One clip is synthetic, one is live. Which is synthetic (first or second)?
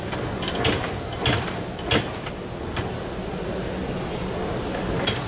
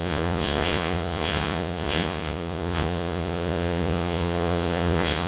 second